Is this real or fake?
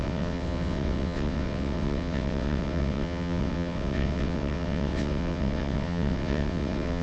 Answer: fake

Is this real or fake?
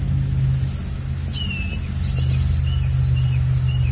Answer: real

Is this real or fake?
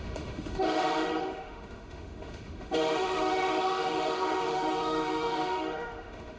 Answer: fake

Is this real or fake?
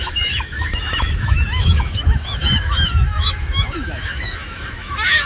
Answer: fake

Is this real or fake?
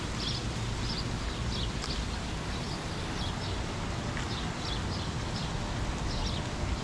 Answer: real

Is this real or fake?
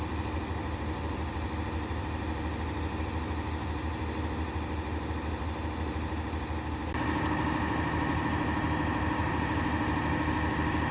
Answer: real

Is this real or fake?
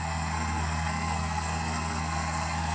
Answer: fake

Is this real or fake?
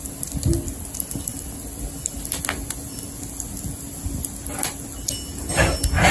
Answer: real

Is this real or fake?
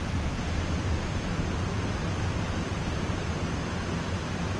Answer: real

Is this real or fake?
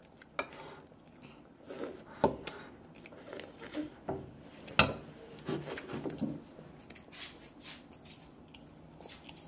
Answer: real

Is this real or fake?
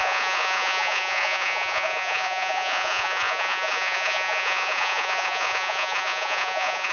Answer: fake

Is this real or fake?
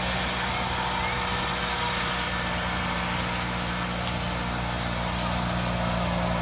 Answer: real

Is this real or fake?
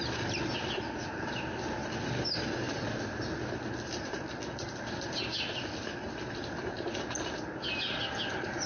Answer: real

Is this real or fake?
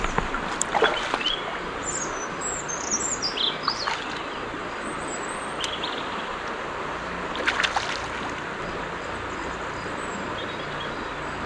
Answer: real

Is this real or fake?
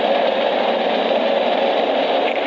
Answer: real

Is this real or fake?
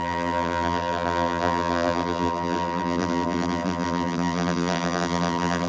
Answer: fake